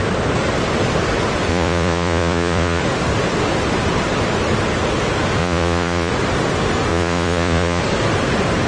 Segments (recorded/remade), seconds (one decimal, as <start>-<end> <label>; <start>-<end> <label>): 0.0-1.5 recorded; 1.5-2.8 remade; 2.8-5.4 recorded; 5.4-6.1 remade; 6.1-6.9 recorded; 6.9-7.8 remade; 7.8-8.7 recorded